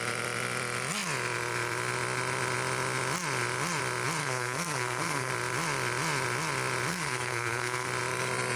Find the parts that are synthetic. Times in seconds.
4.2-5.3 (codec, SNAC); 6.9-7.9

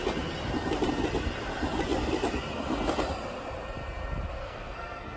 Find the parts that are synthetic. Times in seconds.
4.4-5.2 (codec, SNAC)